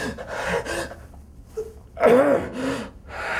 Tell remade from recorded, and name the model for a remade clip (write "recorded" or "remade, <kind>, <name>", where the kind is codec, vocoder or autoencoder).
recorded